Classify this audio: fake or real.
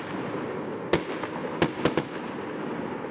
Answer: real